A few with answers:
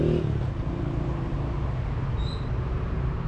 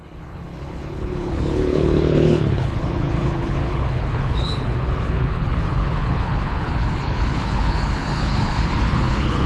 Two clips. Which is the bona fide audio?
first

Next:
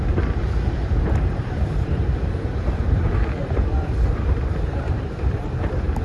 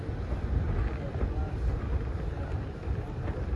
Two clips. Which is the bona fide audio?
second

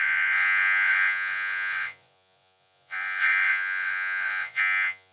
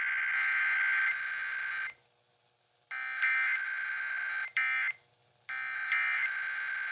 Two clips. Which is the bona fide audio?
second